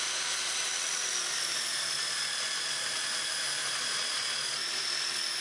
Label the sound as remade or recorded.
recorded